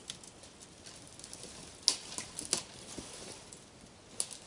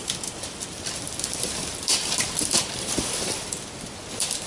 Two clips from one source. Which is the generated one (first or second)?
second